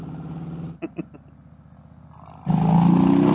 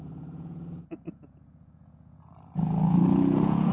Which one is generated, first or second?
second